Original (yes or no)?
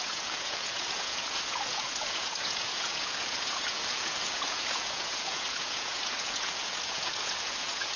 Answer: no